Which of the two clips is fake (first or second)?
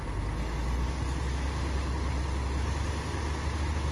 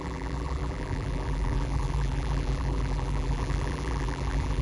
second